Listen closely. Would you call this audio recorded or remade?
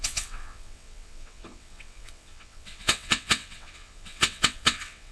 remade